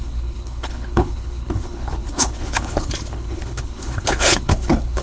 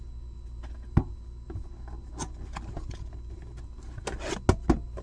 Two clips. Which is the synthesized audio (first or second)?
first